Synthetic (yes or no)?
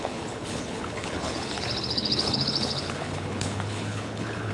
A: yes